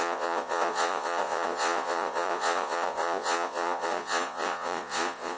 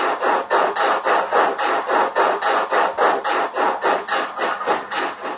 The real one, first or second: second